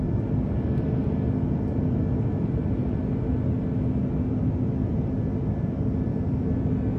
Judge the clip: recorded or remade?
recorded